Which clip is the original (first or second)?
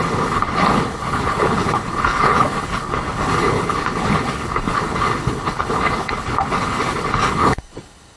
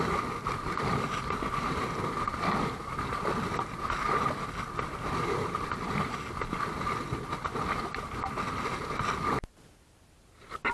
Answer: second